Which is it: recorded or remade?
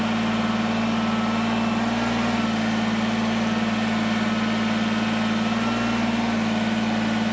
recorded